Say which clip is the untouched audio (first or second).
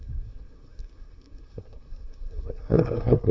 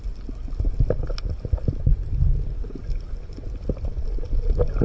second